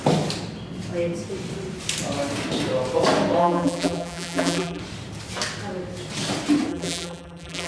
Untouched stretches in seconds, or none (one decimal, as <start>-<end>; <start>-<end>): 0.0-3.4; 4.8-6.7